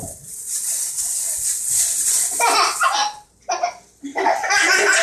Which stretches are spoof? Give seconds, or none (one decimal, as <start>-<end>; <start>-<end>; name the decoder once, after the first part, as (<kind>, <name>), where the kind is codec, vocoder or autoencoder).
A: 4.1-4.6 (vocoder, BigVGAN v2)